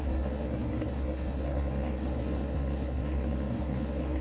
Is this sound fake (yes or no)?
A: yes